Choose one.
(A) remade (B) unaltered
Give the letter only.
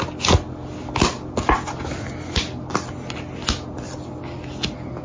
B